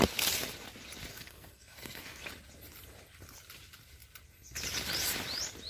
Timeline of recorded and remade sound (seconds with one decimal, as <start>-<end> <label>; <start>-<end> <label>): 0.0-1.1 recorded; 1.1-2.2 remade; 2.2-5.7 recorded